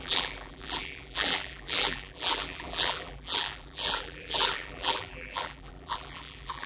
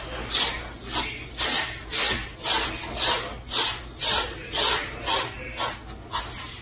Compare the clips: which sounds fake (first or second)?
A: first